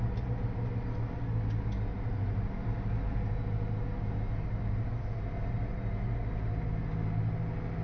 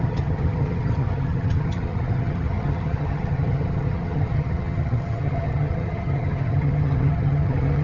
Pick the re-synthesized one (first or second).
second